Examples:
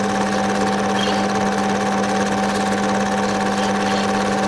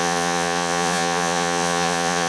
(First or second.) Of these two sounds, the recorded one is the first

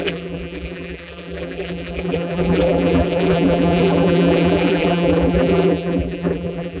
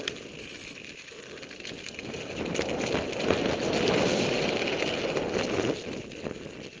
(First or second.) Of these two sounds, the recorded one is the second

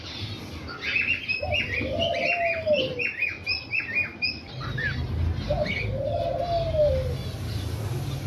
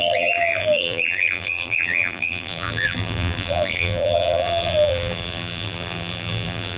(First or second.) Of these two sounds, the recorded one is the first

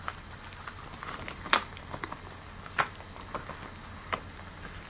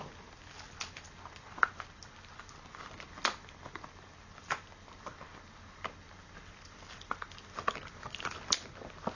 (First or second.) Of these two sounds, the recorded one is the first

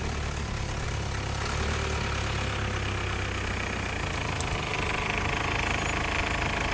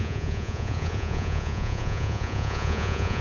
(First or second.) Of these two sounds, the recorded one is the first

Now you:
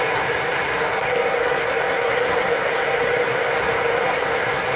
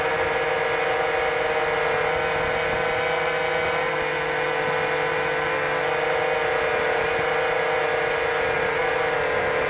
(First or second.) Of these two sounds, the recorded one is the second